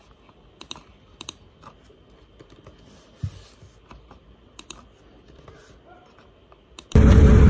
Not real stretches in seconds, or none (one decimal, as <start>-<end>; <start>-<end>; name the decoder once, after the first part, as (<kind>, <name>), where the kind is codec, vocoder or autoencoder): none